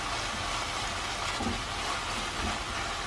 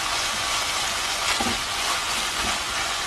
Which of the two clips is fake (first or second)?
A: second